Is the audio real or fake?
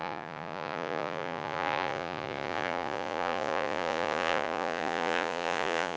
fake